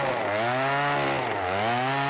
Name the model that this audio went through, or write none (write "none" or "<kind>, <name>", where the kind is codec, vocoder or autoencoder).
none